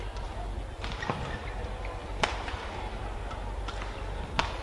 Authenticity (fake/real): real